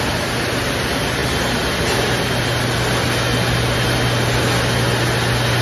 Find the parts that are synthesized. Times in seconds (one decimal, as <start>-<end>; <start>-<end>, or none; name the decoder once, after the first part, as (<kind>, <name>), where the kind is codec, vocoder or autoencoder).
none